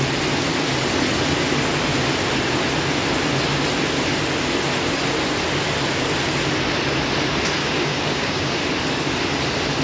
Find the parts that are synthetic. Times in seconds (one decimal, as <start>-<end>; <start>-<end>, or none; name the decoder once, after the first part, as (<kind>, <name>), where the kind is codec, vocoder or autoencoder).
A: 7.6-8.6 (codec, DAC)